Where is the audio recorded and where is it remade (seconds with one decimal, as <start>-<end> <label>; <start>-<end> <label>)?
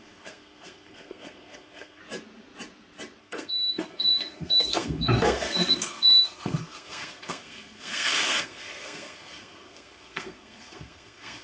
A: 0.0-2.0 remade; 2.0-3.2 recorded; 3.2-11.4 remade